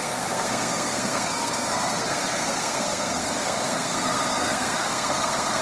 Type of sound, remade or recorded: remade